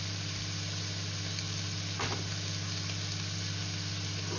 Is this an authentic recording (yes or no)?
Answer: yes